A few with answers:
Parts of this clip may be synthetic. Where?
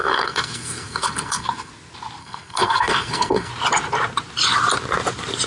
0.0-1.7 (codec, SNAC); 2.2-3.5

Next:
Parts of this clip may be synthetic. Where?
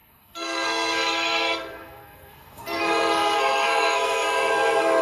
0.0-5.0 (codec, SNAC)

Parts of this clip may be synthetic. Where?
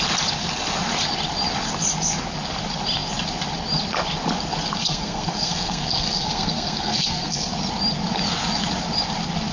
4.8-7.5 (codec, SNAC)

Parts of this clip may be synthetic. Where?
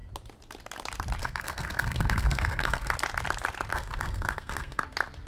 1.2-2.9 (codec, SNAC); 3.7-4.8